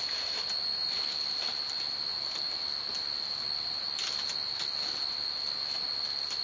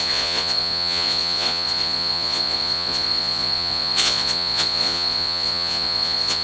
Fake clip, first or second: second